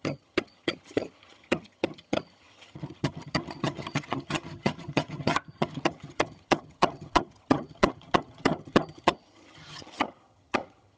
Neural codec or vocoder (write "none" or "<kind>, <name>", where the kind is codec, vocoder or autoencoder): vocoder, HiFi-GAN